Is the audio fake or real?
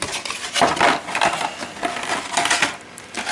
real